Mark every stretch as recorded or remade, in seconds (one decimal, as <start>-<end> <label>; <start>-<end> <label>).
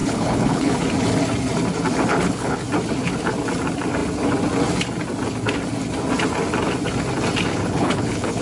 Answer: 0.0-0.7 remade; 0.7-2.1 recorded; 2.1-2.6 remade; 2.6-7.5 recorded; 7.5-8.4 remade